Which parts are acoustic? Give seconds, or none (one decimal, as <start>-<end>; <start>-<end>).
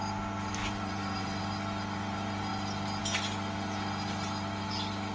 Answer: 0.0-0.6; 1.4-5.1